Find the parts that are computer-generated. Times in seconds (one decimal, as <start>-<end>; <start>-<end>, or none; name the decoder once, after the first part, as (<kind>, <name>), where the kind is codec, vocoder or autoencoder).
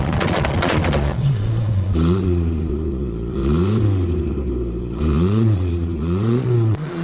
0.0-3.4 (vocoder, Vocos); 4.8-7.0